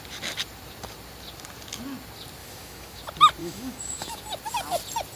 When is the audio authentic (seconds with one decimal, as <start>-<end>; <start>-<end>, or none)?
0.0-2.4; 3.0-3.4; 4.2-5.2